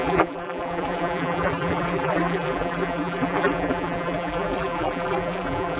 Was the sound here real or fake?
fake